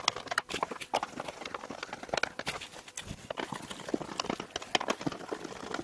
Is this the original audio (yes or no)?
yes